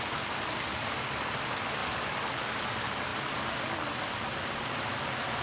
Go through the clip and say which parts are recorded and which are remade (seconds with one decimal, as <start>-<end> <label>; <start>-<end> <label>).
0.0-1.8 recorded; 1.8-2.4 remade; 2.4-5.4 recorded